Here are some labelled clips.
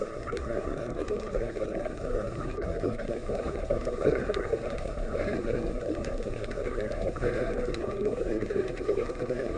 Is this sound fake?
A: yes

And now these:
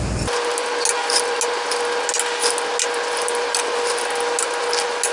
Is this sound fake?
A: no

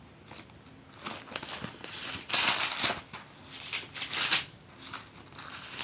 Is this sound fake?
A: no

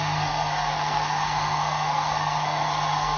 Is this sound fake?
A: yes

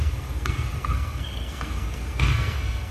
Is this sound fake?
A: yes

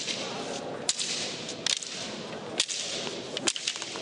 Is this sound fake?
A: no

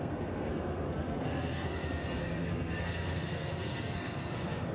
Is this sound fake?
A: yes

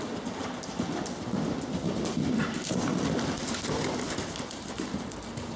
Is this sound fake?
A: no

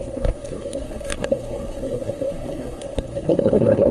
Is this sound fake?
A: yes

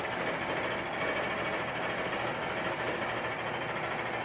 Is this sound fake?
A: no